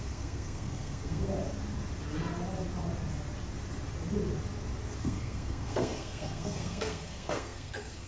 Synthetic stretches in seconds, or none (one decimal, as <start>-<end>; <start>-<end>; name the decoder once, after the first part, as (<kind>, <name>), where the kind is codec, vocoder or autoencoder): 0.0-1.3 (codec, SNAC); 5.0-8.1